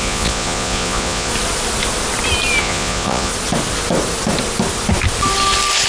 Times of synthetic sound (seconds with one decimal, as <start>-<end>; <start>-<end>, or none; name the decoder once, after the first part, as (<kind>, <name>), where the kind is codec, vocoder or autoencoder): 0.0-1.3 (vocoder, Vocos); 2.6-3.3